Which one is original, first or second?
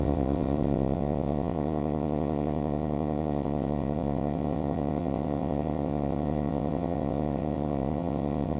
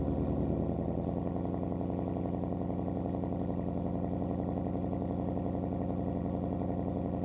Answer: second